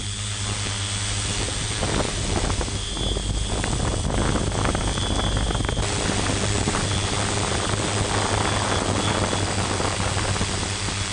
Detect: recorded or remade recorded